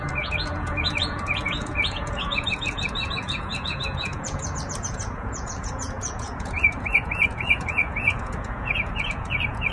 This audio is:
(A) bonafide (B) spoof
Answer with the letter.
B